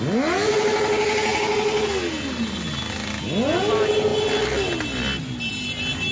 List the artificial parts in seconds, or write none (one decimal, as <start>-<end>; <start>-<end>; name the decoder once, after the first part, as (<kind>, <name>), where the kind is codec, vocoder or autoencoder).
none